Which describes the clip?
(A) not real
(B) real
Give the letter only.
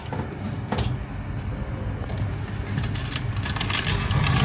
B